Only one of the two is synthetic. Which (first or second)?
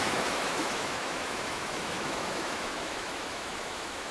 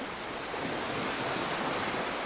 first